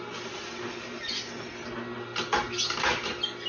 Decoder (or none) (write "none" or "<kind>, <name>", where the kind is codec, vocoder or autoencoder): none